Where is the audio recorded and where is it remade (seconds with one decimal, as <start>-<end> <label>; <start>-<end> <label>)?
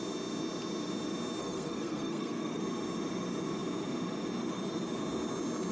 0.0-1.4 recorded; 1.4-2.6 remade; 2.6-5.7 recorded